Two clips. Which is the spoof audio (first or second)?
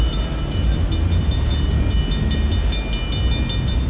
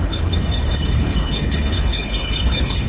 second